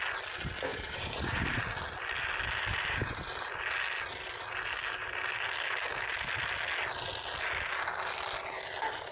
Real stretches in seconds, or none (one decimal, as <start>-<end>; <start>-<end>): 0.0-0.7; 1.6-2.7; 3.3-9.1